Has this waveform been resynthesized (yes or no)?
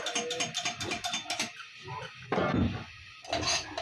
no